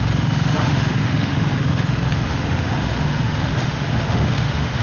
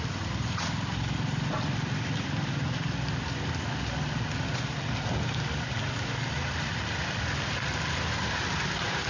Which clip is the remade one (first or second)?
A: first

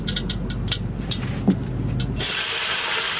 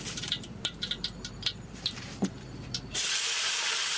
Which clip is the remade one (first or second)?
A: second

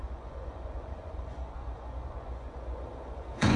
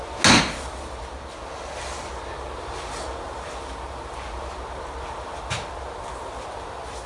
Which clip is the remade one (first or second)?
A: first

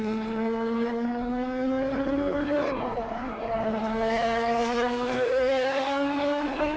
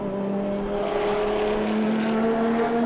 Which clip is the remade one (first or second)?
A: first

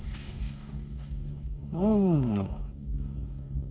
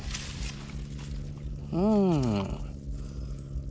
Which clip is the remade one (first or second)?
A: first